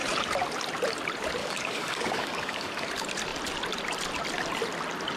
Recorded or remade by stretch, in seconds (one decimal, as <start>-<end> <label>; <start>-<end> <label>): 0.0-1.4 recorded; 1.4-2.9 remade; 2.9-5.2 recorded